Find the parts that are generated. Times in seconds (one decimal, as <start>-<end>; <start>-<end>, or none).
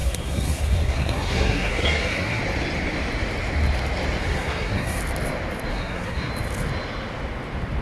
0.0-2.4; 4.2-5.0; 5.7-6.3